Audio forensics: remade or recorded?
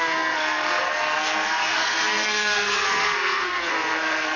remade